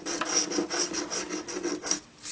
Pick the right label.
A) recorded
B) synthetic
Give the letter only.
A